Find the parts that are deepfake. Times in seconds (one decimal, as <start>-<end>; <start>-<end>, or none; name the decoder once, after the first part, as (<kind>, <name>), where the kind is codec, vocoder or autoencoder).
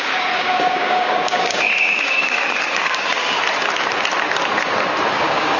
0.0-3.4 (codec, DAC); 5.1-5.6